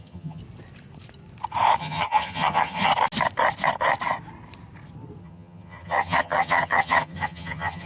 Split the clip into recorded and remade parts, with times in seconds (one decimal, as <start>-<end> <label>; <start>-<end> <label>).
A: 0.0-0.4 remade; 0.4-1.8 recorded; 1.8-2.9 remade; 2.9-5.2 recorded; 5.2-7.9 remade